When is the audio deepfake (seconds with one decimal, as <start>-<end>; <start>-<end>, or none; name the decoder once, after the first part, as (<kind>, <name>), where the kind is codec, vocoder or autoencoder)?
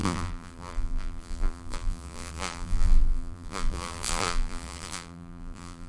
0.0-5.9 (vocoder, BigVGAN v2)